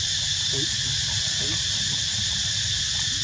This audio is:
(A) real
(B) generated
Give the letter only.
A